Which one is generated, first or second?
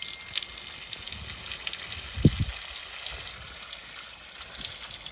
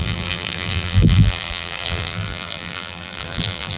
second